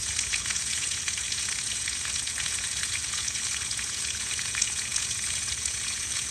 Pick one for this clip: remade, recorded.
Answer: remade